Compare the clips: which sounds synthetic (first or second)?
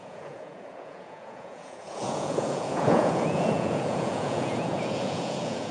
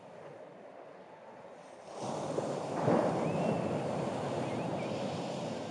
first